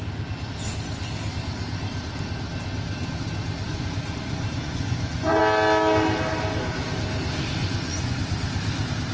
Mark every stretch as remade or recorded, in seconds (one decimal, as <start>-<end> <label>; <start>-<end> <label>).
0.0-3.7 recorded; 3.7-5.4 remade; 5.4-7.6 recorded; 7.6-8.2 remade; 8.2-9.1 recorded